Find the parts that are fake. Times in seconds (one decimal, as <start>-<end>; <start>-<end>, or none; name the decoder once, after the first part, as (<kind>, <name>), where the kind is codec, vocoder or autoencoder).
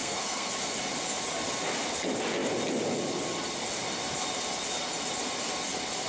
0.0-0.5 (codec, SNAC)